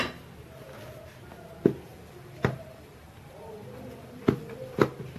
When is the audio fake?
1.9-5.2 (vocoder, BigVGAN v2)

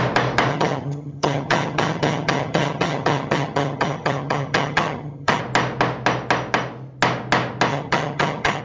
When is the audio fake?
0.5-5.4 (vocoder, HiFi-GAN); 7.7-8.6